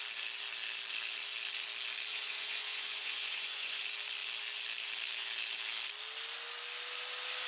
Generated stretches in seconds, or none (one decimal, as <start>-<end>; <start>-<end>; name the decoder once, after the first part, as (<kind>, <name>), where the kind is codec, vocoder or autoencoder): 2.1-3.8 (vocoder, Vocos)